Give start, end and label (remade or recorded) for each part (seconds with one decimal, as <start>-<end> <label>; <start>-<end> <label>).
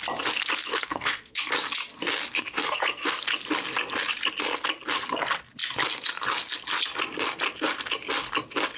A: 0.0-0.7 recorded; 0.7-1.5 remade; 1.5-2.3 recorded; 2.3-3.2 remade; 3.2-8.8 recorded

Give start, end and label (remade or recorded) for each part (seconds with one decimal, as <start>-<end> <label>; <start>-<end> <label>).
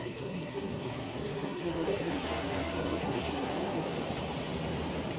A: 0.0-4.0 remade; 4.0-5.2 recorded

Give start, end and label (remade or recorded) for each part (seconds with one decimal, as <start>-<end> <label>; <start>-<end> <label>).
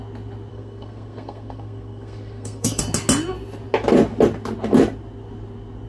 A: 0.0-0.5 recorded; 0.5-2.8 remade; 2.8-5.9 recorded